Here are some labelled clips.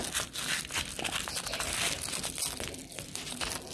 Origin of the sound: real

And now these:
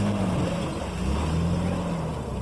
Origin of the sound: real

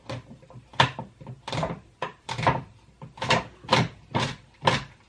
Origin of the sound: real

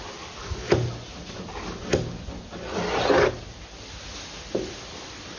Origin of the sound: real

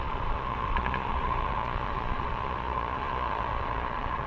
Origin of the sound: fake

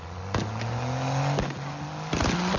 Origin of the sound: real